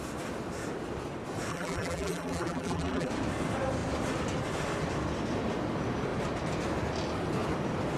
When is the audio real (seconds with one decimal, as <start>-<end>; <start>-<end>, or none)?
0.0-1.5; 3.1-8.0